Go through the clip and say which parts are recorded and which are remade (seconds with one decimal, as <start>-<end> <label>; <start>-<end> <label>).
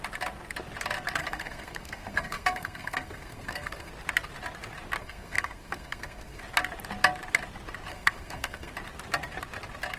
0.0-1.2 recorded; 1.2-3.9 remade; 3.9-5.0 recorded; 5.0-6.4 remade; 6.4-7.9 recorded; 7.9-8.7 remade; 8.7-10.0 recorded